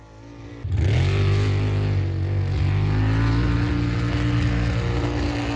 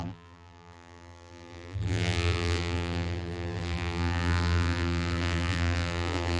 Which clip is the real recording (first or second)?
first